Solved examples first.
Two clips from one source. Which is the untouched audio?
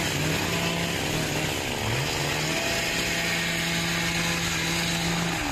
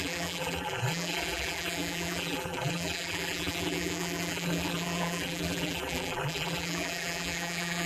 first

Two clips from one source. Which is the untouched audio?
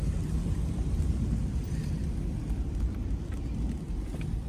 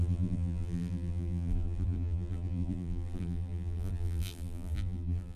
first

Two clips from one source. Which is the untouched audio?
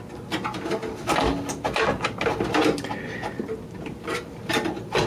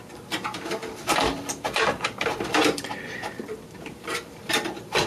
first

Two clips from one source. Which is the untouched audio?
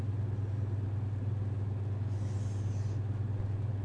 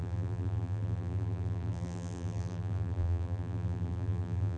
first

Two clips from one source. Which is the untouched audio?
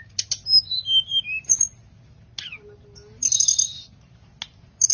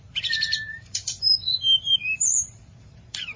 first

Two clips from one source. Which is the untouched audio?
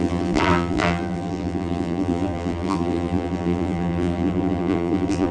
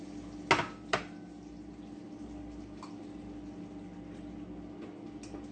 second